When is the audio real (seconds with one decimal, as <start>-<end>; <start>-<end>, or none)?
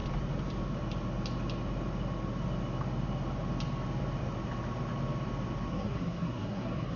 0.0-5.7